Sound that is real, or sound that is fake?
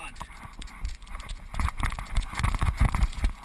fake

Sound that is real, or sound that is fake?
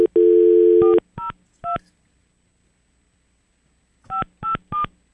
real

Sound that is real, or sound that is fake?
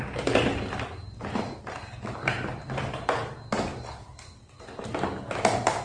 real